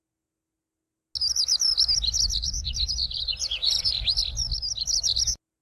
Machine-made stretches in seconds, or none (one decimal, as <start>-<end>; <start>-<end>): 2.4-4.2

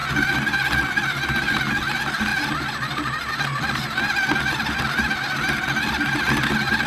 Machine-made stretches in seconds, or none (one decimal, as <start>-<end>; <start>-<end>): none

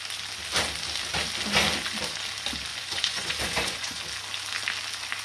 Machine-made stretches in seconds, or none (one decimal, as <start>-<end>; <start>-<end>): 2.7-4.0

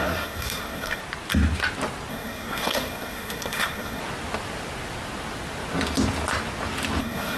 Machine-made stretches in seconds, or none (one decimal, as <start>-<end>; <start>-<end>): 0.0-1.0; 2.1-4.0; 7.0-7.4